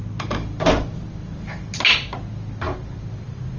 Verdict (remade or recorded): recorded